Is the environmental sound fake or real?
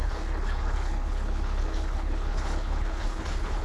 fake